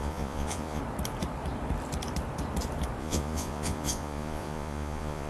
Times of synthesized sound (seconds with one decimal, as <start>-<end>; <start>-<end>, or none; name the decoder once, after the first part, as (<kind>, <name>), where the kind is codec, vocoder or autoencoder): 0.0-0.8 (vocoder, Vocos); 3.0-5.3